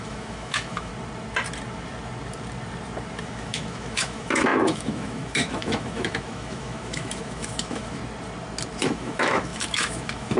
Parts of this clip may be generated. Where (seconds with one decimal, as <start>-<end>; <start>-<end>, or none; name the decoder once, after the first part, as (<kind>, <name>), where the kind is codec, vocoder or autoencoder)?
0.0-0.9 (autoencoder, DAC-VAE); 3.2-8.0; 8.8-10.4